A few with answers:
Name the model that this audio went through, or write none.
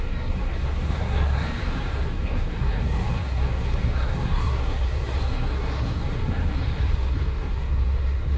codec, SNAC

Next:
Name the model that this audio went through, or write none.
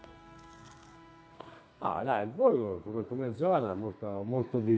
codec, SNAC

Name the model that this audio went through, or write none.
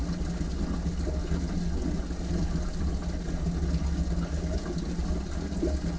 none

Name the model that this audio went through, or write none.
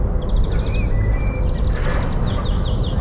none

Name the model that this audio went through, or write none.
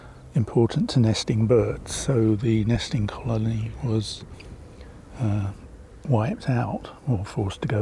none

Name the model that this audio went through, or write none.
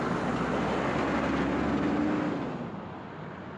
none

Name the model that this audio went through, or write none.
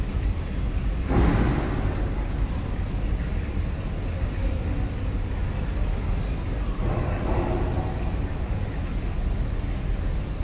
none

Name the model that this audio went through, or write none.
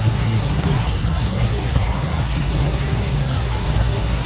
codec, SNAC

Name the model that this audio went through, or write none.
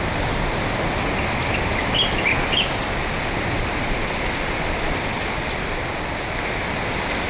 none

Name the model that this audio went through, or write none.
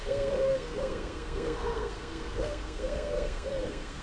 codec, SNAC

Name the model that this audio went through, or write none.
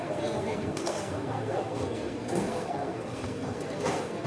codec, SNAC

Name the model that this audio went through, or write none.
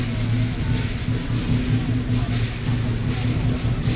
none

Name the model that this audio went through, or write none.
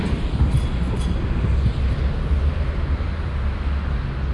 none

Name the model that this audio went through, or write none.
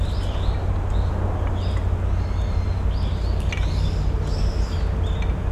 none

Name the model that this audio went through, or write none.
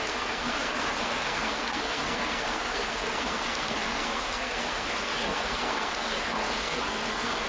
codec, SNAC